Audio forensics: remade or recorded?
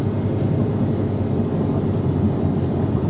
recorded